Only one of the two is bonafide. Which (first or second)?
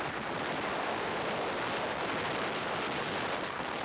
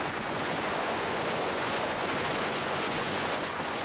first